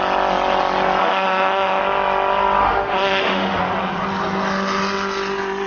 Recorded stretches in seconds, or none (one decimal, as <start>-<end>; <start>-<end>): 0.0-1.0; 1.8-2.6; 3.6-5.7